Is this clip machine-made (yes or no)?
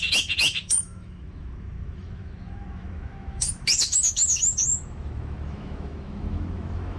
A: yes